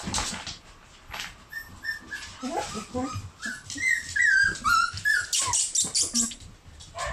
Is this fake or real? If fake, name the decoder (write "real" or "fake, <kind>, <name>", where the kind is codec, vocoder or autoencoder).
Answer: real